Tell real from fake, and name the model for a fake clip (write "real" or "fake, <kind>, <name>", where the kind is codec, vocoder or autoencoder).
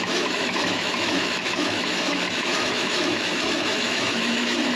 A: fake, autoencoder, DAC-VAE